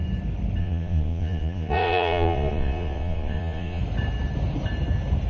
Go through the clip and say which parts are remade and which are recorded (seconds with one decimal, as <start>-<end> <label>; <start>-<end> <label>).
0.0-0.6 recorded; 0.6-3.8 remade; 3.8-5.3 recorded